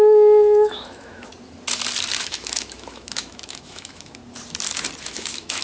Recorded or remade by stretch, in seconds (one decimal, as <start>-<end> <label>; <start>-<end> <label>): 0.0-1.3 remade; 1.3-2.2 recorded; 2.2-4.2 remade; 4.2-5.0 recorded; 5.0-5.6 remade